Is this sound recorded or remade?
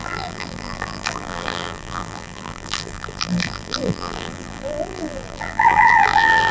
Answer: remade